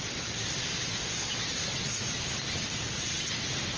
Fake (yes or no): no